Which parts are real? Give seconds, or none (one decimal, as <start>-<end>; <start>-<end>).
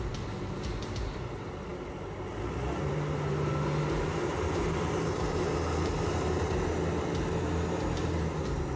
0.0-4.3; 6.6-8.8